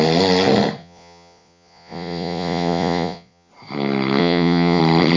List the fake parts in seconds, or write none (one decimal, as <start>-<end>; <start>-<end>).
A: 0.8-3.5; 4.2-4.8